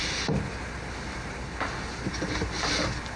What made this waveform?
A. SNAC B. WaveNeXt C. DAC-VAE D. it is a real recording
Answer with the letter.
D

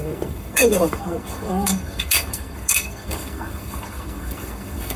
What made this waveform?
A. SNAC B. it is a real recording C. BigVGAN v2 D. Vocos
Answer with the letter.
A